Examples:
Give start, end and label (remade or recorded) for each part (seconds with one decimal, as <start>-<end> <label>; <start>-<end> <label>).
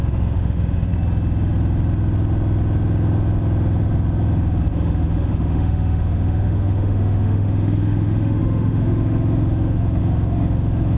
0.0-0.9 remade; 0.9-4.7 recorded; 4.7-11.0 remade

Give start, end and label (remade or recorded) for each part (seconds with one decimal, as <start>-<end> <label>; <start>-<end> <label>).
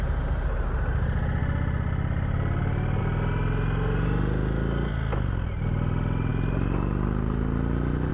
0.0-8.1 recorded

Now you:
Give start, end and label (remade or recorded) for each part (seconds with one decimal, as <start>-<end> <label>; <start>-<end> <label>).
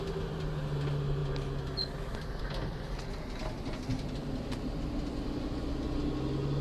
0.0-6.6 recorded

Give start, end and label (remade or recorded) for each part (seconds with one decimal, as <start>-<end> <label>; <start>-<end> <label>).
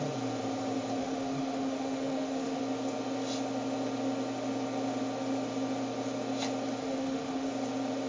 0.0-1.0 recorded; 1.0-2.6 remade; 2.6-6.8 recorded; 6.8-7.5 remade; 7.5-8.1 recorded